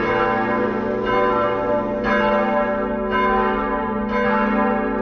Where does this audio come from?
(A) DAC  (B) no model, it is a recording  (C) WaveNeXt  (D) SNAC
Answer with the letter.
B